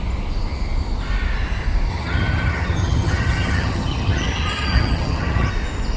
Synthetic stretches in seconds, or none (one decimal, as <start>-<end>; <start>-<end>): 1.9-5.5